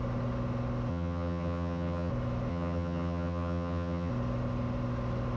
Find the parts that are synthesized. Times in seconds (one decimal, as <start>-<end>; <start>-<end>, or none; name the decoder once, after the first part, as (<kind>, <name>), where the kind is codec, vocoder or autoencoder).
0.9-2.1 (vocoder, HiFi-GAN); 2.5-4.1